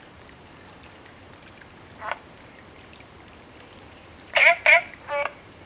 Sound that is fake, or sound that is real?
fake